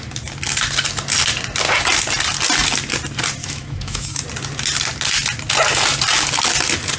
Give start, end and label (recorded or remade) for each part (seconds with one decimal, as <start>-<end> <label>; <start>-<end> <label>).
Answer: 0.0-3.4 recorded; 3.4-4.2 remade; 4.2-7.0 recorded